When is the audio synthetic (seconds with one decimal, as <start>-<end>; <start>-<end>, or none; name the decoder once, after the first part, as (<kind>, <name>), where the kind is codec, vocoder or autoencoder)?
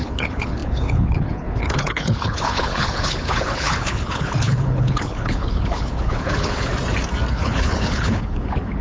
0.0-6.7 (codec, HILCodec); 7.3-8.8